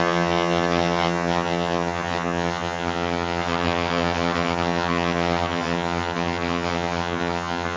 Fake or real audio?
fake